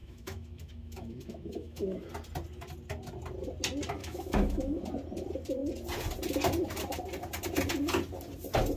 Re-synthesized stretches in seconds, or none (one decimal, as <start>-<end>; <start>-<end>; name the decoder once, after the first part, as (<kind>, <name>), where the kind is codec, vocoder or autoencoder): 0.0-2.1 (autoencoder, DAC-VAE); 4.0-4.8